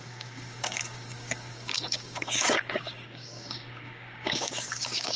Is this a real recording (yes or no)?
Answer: no